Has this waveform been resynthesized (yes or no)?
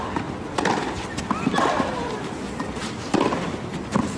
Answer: no